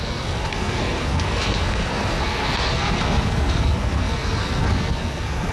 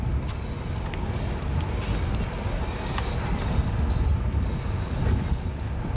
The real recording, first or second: second